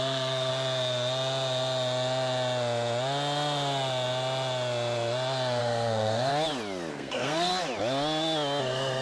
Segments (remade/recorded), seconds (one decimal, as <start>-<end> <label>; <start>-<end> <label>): 0.0-0.5 remade; 0.5-5.6 recorded; 5.6-6.3 remade; 6.3-6.9 recorded; 6.9-7.5 remade; 7.5-8.6 recorded; 8.6-9.0 remade